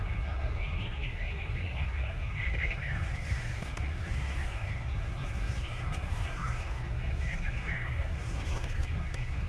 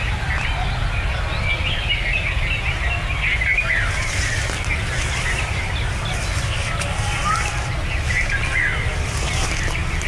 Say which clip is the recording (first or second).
second